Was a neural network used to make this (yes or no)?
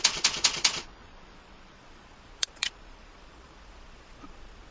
yes